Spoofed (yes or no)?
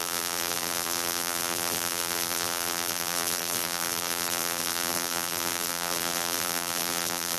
yes